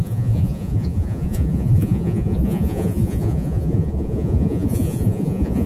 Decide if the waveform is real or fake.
fake